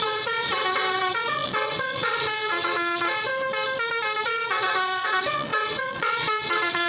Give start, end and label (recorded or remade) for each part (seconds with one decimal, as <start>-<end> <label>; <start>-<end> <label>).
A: 0.0-3.3 remade; 3.3-4.2 recorded; 4.2-6.9 remade